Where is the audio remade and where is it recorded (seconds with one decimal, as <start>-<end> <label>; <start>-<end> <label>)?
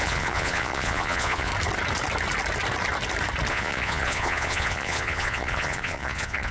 0.0-1.5 remade; 1.5-3.5 recorded; 3.5-6.5 remade